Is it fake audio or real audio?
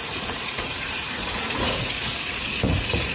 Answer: fake